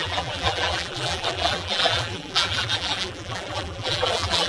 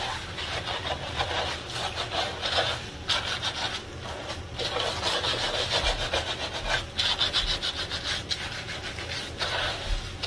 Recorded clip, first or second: second